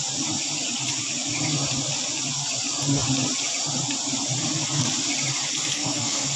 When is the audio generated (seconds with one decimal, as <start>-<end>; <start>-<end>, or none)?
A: 5.7-6.4